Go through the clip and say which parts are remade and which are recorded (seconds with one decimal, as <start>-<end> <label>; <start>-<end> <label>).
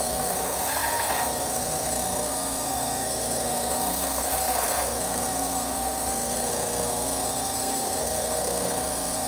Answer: 0.0-9.3 remade